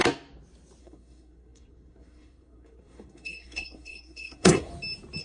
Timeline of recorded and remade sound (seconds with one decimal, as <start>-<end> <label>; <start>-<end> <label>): 0.0-0.8 recorded; 0.8-4.7 remade; 4.7-5.2 recorded